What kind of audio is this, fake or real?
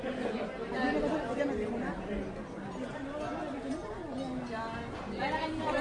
real